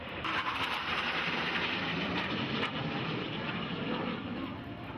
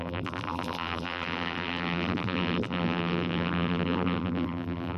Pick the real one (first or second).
first